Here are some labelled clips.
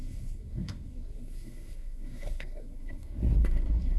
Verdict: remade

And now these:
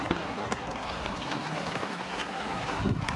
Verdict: remade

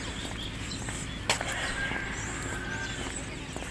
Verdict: recorded